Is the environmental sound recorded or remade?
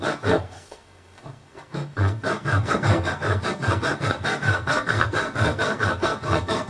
remade